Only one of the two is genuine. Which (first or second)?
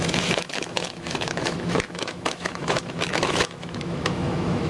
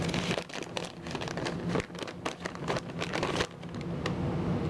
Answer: second